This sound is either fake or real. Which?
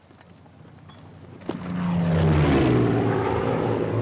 real